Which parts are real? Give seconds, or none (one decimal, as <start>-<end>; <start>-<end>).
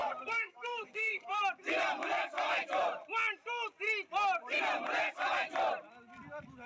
1.4-6.7